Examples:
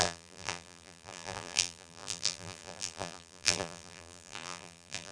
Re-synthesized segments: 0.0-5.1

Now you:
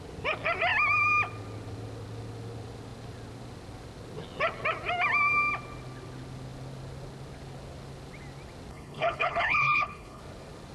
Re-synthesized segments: 8.7-10.2

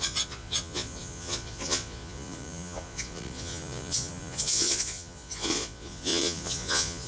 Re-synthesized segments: 0.0-7.1